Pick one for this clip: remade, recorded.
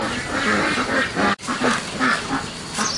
recorded